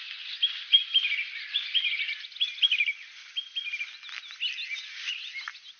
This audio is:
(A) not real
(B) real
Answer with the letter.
B